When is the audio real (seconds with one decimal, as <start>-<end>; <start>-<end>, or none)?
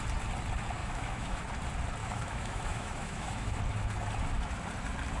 0.0-0.8; 1.4-2.0; 3.6-5.2